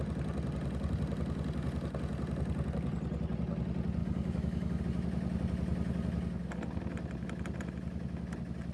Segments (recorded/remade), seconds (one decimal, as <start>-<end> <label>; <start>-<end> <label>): 0.0-4.0 recorded; 4.0-4.8 remade; 4.8-8.7 recorded